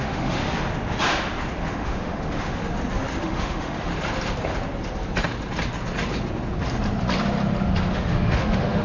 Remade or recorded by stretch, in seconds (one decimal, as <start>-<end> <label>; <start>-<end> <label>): 0.0-0.4 remade; 0.4-1.7 recorded; 1.7-2.6 remade; 2.6-3.2 recorded; 3.2-3.9 remade; 3.9-7.9 recorded; 7.9-8.8 remade